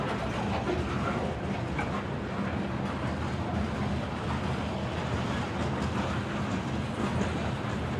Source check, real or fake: real